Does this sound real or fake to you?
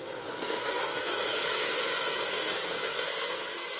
fake